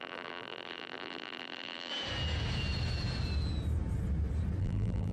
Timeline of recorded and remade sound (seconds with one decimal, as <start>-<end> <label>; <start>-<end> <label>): 0.0-1.9 remade; 1.9-4.6 recorded; 4.6-5.1 remade